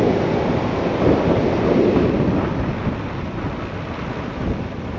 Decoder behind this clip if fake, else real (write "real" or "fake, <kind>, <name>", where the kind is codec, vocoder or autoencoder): real